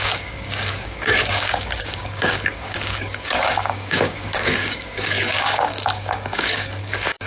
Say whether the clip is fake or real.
fake